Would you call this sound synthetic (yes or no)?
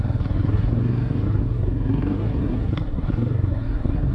yes